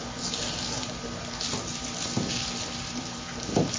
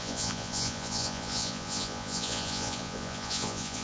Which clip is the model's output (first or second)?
second